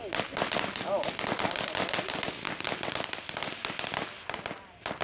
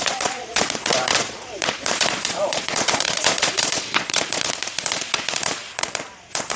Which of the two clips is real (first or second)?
first